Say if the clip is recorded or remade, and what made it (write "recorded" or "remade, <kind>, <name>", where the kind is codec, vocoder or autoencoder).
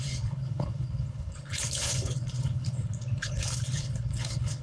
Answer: remade, codec, HILCodec